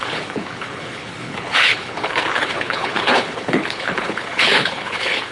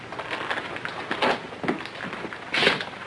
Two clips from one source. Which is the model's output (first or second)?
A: first